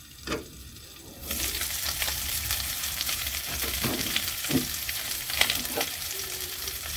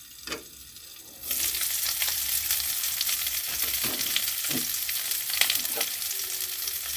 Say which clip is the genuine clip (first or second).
second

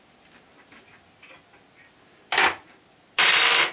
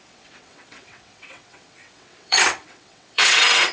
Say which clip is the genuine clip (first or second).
first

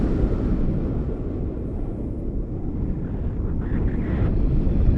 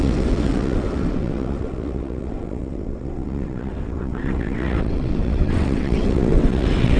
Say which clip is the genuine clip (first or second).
first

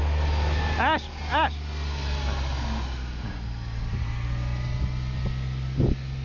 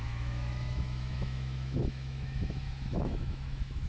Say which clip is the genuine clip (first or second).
first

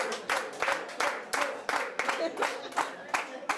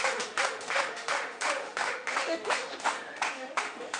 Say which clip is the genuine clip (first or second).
first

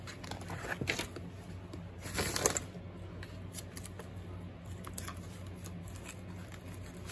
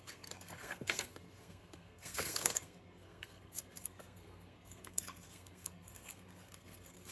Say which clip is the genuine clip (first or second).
first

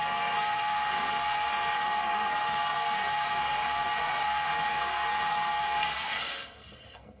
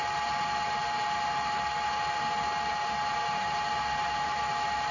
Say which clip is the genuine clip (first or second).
second